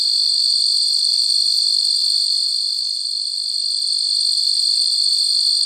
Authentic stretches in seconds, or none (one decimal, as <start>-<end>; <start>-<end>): 0.0-1.1; 2.0-2.5; 5.1-5.7